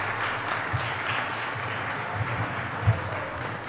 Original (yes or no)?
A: yes